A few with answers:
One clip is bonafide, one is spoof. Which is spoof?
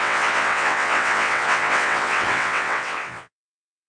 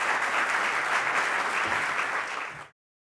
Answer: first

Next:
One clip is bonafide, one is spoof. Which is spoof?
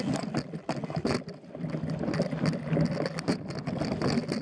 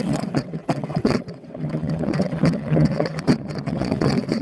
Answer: second